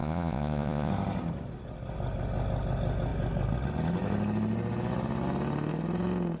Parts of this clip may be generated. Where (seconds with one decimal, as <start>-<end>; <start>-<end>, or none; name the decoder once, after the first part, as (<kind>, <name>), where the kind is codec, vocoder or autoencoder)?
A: 0.0-0.9 (vocoder, Vocos)